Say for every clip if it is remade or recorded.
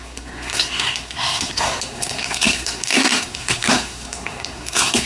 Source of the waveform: remade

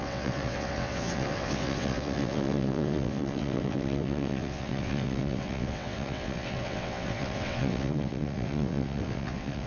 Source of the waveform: remade